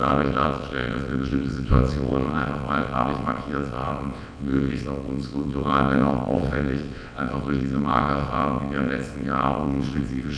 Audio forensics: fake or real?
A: fake